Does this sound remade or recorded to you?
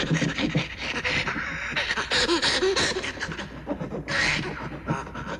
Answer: recorded